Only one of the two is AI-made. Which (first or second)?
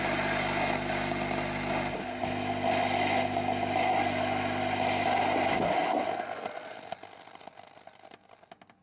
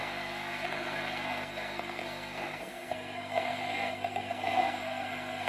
second